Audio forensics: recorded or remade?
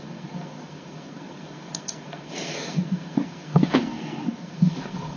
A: remade